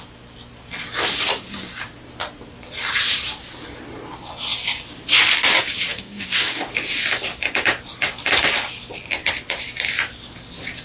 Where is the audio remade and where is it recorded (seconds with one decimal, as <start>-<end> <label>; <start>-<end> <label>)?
0.0-5.9 recorded; 5.9-6.7 remade; 6.7-10.8 recorded